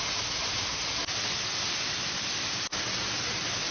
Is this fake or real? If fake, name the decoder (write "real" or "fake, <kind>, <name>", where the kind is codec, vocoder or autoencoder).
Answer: real